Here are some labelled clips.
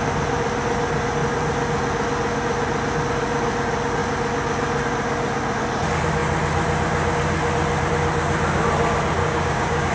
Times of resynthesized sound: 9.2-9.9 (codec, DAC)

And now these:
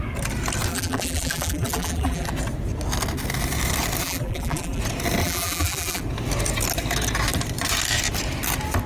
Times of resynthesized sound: 0.7-2.3 (vocoder, BigVGAN v2); 4.0-4.8; 5.2-6.0

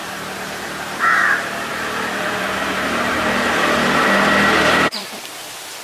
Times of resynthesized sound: 0.0-1.2 (vocoder, BigVGAN v2); 1.7-5.2

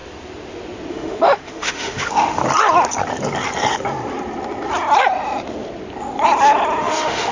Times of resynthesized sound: 0.9-2.4 (autoencoder, DAC-VAE); 6.8-7.3

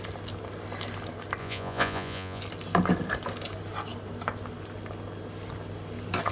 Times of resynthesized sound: 1.4-2.4 (vocoder, Vocos)

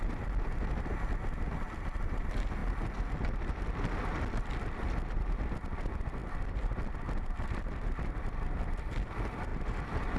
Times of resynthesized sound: 0.0-2.6 (vocoder, BigVGAN v2); 4.1-10.2

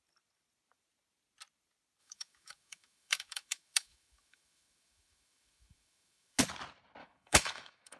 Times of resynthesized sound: 2.0-6.4 (autoencoder, DAC-VAE); 7.0-8.0